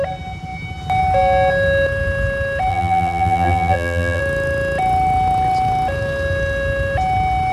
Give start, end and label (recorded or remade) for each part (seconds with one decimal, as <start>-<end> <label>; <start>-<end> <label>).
0.0-2.7 recorded; 2.7-4.2 remade; 4.2-7.5 recorded